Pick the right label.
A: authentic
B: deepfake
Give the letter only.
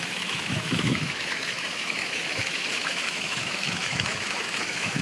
B